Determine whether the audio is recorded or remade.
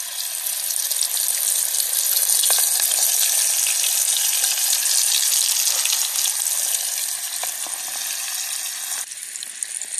recorded